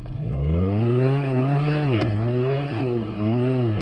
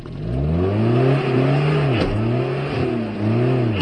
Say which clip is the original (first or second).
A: second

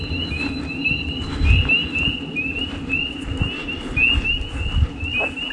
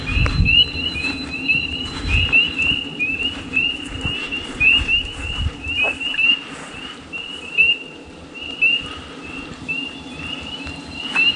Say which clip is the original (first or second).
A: first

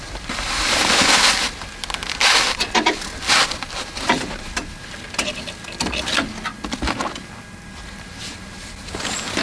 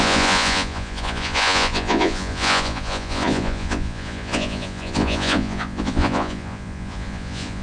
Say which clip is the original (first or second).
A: first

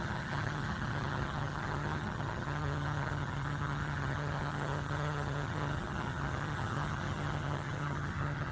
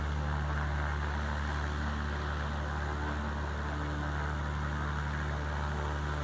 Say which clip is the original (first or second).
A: second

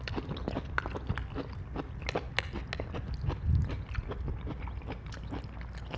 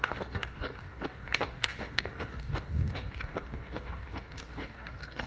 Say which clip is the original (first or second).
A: first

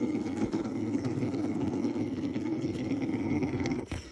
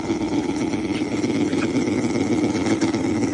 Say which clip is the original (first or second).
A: second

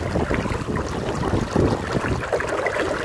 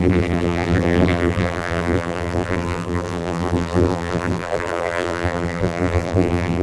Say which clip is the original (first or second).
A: first